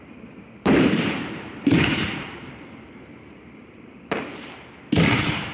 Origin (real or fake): fake